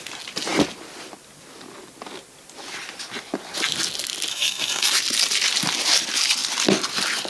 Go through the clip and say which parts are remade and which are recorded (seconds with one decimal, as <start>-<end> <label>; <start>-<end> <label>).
0.0-4.3 recorded; 4.3-4.9 remade; 4.9-7.3 recorded